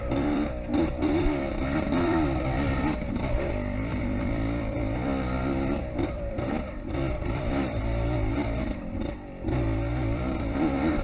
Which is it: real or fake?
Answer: fake